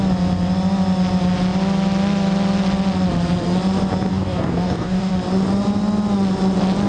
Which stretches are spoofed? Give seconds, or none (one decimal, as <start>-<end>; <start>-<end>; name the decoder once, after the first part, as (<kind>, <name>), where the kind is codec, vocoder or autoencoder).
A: 4.1-5.1 (codec, DAC)